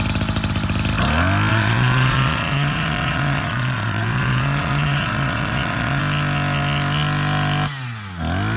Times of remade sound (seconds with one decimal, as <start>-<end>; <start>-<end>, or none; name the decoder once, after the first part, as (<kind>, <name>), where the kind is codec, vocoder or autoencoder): 1.5-6.0 (vocoder, Vocos)